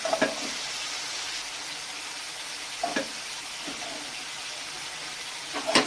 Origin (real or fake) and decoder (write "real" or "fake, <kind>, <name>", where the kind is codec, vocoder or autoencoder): real